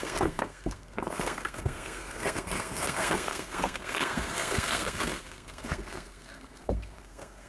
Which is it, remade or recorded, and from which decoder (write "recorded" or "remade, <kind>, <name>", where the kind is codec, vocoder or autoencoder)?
remade, codec, SNAC